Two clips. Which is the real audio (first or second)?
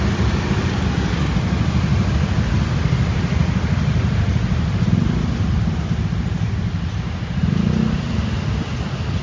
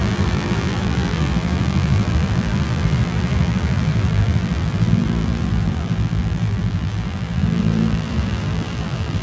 first